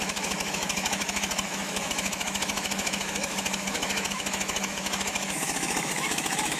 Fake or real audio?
fake